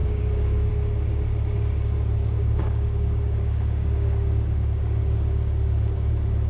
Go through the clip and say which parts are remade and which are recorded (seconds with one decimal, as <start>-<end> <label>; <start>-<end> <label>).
0.0-0.7 remade; 0.7-2.2 recorded; 2.2-6.1 remade; 6.1-6.5 recorded